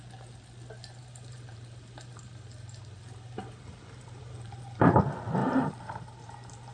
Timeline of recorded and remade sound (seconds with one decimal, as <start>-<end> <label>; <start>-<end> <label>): 0.0-1.0 recorded; 1.0-5.0 remade; 5.0-5.4 recorded; 5.4-6.7 remade